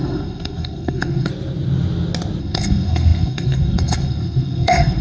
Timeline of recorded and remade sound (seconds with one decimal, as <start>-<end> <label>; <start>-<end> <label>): 0.0-1.3 remade; 1.3-2.4 recorded; 2.4-5.0 remade